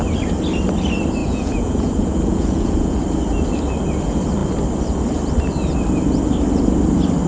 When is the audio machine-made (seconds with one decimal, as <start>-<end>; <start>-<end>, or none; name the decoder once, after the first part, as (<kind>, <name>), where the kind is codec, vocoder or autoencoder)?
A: 1.2-3.0 (vocoder, Vocos)